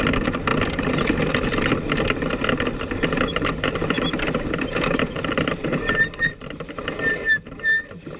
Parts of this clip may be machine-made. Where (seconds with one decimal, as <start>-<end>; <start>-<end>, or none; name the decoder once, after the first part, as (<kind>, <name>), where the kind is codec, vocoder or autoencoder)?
3.3-7.1 (vocoder, BigVGAN v2)